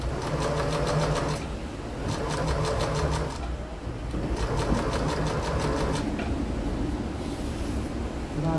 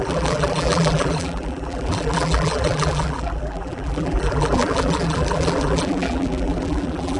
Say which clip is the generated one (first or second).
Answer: second